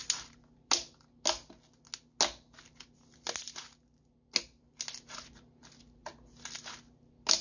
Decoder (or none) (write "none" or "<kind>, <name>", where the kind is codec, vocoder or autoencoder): none